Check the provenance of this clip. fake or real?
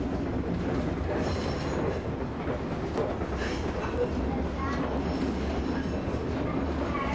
real